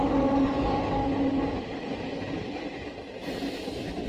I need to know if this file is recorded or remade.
recorded